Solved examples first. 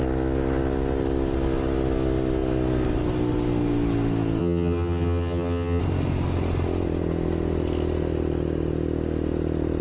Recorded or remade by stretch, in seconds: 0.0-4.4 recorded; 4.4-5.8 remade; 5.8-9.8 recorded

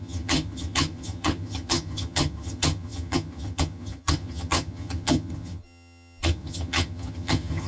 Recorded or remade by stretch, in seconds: 0.0-7.7 remade